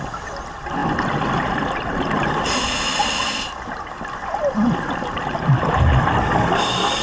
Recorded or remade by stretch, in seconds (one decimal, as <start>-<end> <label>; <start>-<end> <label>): 0.0-7.0 recorded